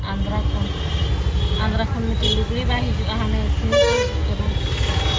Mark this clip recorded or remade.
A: recorded